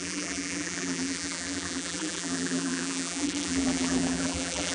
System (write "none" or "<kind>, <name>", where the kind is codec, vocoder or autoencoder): vocoder, BigVGAN v2